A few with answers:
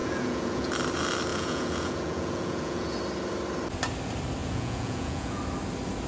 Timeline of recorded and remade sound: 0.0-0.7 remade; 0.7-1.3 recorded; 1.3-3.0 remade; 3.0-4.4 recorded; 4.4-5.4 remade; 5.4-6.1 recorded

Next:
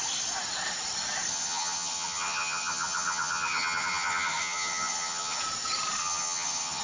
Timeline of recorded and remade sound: 0.0-1.3 recorded; 1.3-5.4 remade; 5.4-6.0 recorded; 6.0-6.8 remade

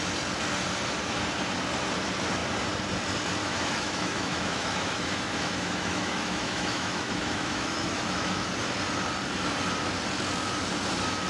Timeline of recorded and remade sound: 0.0-3.4 recorded; 3.4-8.5 remade; 8.5-11.3 recorded

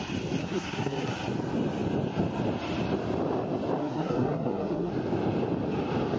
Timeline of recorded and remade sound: 0.0-0.4 recorded; 0.4-1.1 remade; 1.1-3.8 recorded; 3.8-4.9 remade; 4.9-6.2 recorded

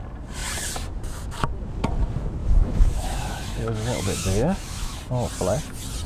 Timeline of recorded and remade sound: 0.0-2.4 recorded; 2.4-5.0 remade; 5.0-6.1 recorded

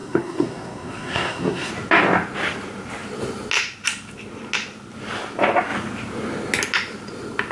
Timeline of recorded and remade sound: 0.0-1.7 remade; 1.7-7.5 recorded

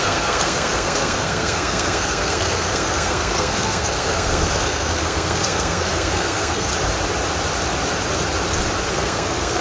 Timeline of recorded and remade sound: 0.0-6.7 remade; 6.7-8.9 recorded; 8.9-9.6 remade